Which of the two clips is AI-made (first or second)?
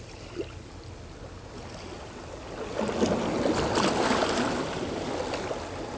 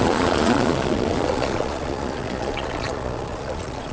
second